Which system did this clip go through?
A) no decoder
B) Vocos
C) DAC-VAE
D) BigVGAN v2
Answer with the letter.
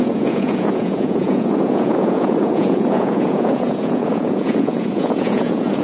B